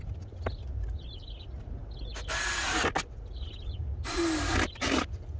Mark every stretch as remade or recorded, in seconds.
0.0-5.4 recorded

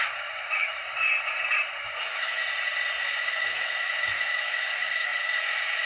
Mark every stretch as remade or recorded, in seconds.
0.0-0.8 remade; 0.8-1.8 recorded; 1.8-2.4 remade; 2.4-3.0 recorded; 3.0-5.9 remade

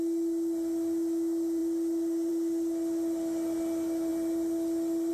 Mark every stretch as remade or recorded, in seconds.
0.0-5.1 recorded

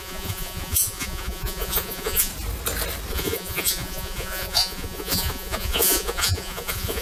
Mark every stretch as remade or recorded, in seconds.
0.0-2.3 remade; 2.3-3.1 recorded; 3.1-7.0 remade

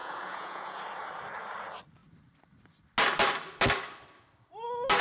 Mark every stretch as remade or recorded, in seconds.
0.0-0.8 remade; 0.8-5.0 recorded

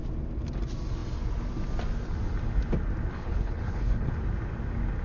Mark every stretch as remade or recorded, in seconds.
0.0-3.1 recorded; 3.1-4.1 remade; 4.1-5.0 recorded

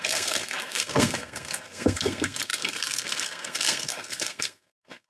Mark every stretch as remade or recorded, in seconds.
0.0-5.1 remade

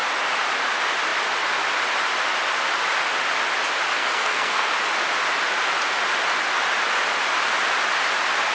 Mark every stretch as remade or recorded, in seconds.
0.0-3.9 recorded; 3.9-4.7 remade; 4.7-8.5 recorded